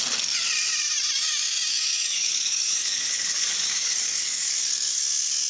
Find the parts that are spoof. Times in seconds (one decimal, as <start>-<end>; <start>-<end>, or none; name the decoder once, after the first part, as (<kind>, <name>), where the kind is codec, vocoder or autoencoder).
1.7-5.0 (codec, DAC)